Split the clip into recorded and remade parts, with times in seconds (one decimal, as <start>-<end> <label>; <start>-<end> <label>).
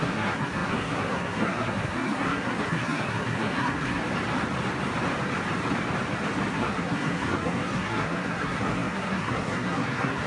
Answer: 0.0-4.0 remade; 4.0-6.5 recorded; 6.5-10.3 remade